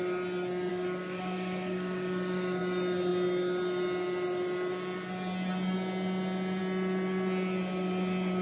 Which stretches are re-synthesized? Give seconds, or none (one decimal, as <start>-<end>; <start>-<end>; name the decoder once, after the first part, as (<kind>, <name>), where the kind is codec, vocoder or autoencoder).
0.7-2.6 (codec, DAC)